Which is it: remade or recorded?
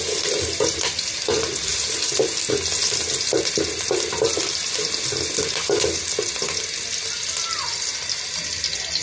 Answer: recorded